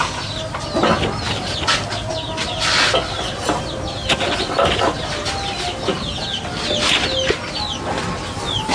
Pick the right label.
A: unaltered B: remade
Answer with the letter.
A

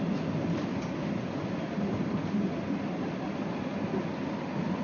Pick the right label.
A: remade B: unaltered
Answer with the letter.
B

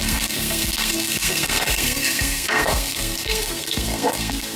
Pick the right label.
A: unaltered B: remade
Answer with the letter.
B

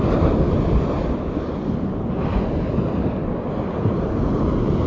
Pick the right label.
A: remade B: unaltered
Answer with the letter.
B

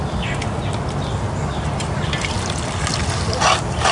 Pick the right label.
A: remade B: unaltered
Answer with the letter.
B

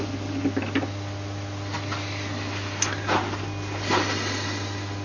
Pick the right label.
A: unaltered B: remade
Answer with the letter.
A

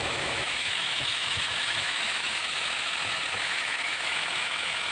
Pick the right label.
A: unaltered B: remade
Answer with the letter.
B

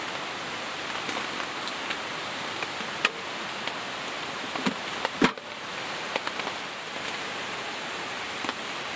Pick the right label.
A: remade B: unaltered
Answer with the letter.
B